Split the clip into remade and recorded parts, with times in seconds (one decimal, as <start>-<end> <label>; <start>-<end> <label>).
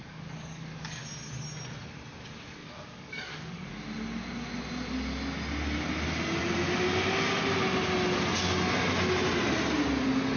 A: 0.0-1.0 remade; 1.0-2.6 recorded; 2.6-3.7 remade; 3.7-10.4 recorded